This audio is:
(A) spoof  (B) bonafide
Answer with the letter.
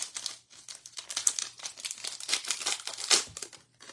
B